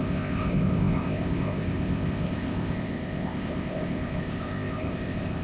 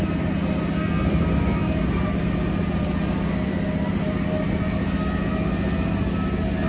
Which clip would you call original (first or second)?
second